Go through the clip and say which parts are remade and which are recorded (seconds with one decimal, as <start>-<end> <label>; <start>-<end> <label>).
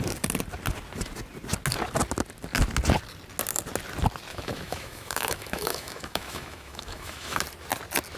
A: 0.0-4.3 recorded; 4.3-7.4 remade; 7.4-8.2 recorded